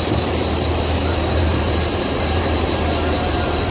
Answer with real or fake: fake